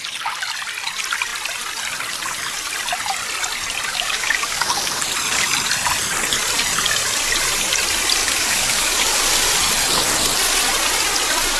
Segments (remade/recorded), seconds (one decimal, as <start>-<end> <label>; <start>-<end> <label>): 0.0-3.9 recorded; 3.9-5.0 remade; 5.0-8.2 recorded; 8.2-9.2 remade; 9.2-11.6 recorded